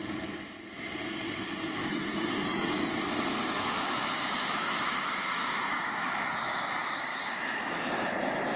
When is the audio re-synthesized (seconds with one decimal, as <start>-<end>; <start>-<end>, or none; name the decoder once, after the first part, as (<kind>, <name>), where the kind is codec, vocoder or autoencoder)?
1.8-2.9 (autoencoder, DAC-VAE); 3.4-6.3; 7.1-7.9

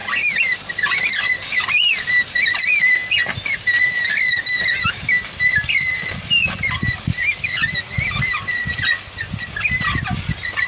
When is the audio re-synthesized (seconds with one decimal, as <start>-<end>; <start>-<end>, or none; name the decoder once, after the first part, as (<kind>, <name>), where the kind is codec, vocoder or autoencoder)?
none

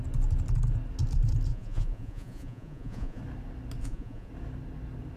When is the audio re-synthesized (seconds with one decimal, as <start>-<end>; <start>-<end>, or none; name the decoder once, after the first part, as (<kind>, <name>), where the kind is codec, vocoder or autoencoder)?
1.5-3.2 (vocoder, Vocos); 3.8-4.3

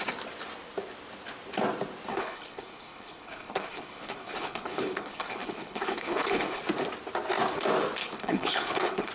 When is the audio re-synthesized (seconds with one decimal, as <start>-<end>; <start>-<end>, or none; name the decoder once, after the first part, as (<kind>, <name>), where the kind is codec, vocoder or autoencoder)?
2.1-6.6 (codec, HILCodec); 8.0-9.1

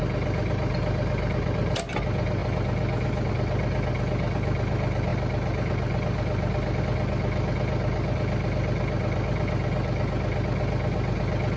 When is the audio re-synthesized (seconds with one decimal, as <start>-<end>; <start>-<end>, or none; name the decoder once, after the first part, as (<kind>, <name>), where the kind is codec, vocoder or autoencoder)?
none